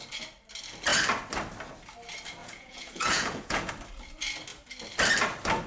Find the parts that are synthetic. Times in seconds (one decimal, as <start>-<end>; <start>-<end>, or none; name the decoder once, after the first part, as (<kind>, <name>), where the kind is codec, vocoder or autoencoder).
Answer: 2.4-3.7 (vocoder, Vocos)